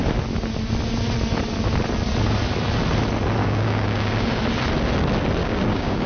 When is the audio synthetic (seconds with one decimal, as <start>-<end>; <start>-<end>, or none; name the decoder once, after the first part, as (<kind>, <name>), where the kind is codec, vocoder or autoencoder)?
3.4-4.4 (codec, DAC); 5.4-6.1